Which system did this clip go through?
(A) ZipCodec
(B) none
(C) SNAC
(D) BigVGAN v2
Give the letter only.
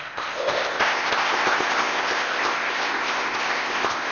A